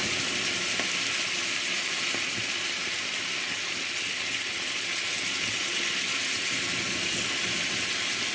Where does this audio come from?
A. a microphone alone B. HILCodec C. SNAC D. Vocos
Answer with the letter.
A